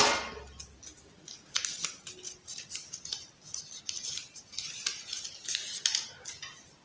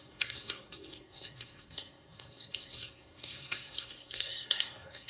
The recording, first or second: first